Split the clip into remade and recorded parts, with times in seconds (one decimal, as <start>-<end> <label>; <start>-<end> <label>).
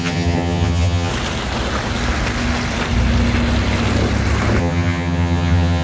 0.0-1.1 remade; 1.1-4.6 recorded; 4.6-5.8 remade